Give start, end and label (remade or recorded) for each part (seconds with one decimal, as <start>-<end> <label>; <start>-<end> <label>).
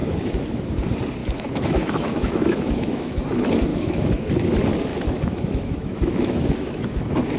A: 0.0-0.7 remade; 0.7-1.2 recorded; 1.2-3.2 remade; 3.2-3.7 recorded; 3.7-4.3 remade; 4.3-4.9 recorded; 4.9-7.0 remade; 7.0-7.4 recorded